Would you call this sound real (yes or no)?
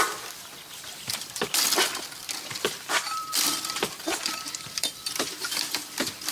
no